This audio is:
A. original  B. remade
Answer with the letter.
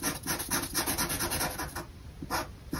A